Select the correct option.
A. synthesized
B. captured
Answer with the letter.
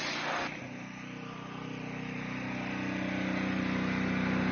B